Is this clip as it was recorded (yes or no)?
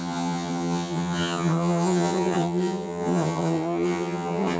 no